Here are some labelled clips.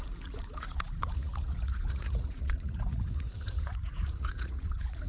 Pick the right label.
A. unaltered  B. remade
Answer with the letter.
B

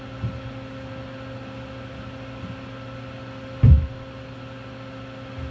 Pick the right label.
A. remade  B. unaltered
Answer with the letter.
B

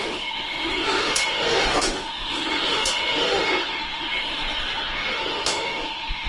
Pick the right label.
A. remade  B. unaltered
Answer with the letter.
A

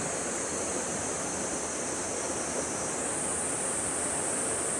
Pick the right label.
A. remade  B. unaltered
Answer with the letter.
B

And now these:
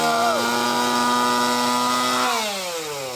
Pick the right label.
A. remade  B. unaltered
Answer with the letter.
B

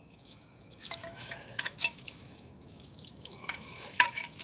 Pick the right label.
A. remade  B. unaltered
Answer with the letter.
A